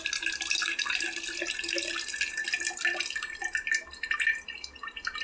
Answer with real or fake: real